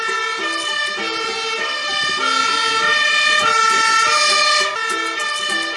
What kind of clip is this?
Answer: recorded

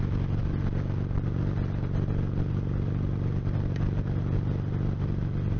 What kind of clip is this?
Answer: recorded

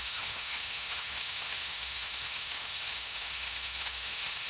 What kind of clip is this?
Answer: remade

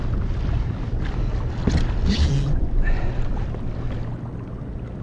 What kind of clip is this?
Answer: recorded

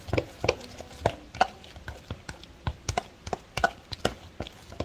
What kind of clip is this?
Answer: recorded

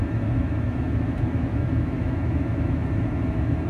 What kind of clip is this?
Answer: remade